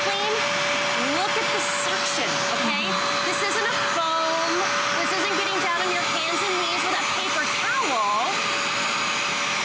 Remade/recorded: recorded